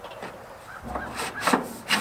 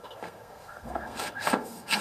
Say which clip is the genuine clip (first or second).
first